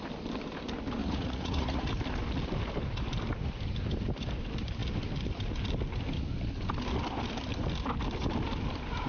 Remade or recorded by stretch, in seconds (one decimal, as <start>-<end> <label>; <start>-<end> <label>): 0.0-1.0 recorded; 1.0-1.9 remade; 1.9-9.1 recorded